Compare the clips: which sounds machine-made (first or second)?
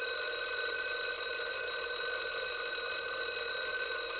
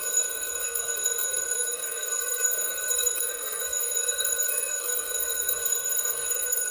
second